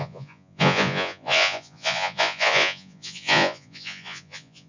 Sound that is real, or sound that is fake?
fake